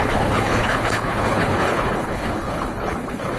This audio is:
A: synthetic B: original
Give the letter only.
A